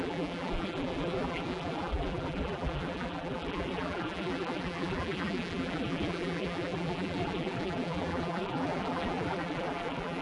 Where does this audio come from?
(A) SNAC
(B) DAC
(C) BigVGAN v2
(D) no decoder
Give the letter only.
C